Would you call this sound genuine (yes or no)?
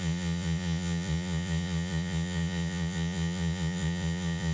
no